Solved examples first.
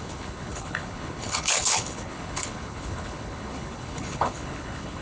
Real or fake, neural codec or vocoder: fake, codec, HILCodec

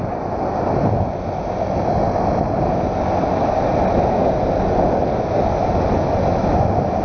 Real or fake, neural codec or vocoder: real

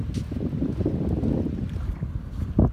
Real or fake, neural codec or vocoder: real